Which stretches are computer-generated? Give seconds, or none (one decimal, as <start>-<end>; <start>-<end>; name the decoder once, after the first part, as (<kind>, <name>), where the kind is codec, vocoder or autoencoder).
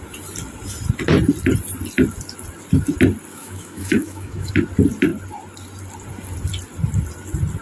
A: 3.3-4.5 (autoencoder, DAC-VAE)